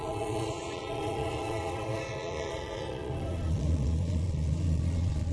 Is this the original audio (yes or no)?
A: no